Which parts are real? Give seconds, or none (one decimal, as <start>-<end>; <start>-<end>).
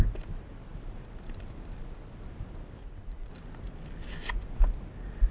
0.0-2.8; 3.3-5.3